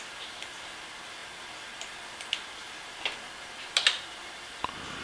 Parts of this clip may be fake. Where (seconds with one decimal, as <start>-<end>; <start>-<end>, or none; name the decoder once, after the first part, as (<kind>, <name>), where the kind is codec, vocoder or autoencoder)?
none